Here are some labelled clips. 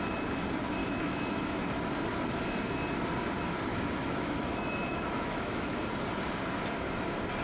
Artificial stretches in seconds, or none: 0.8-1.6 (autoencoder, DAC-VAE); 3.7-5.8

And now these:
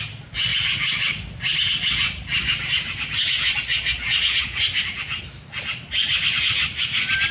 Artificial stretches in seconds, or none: none

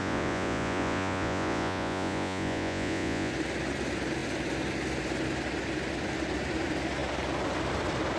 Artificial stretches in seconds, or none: 0.0-3.3 (vocoder, Vocos)

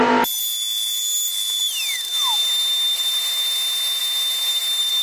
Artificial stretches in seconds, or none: none

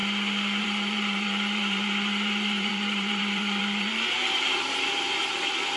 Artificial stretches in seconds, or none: 0.6-5.8 (vocoder, BigVGAN v2)